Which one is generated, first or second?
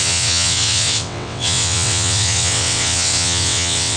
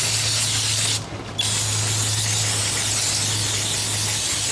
first